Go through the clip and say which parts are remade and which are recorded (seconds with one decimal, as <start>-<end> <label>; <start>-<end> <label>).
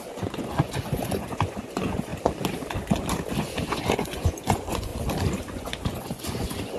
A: 0.0-2.1 remade; 2.1-3.4 recorded; 3.4-4.9 remade; 4.9-5.4 recorded; 5.4-6.8 remade